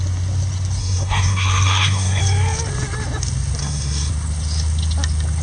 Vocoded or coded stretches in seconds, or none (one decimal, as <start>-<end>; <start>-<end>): 0.8-2.2; 3.6-4.1